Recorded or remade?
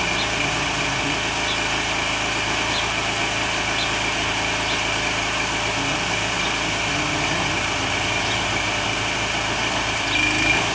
recorded